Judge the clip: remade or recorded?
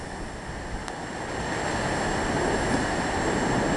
recorded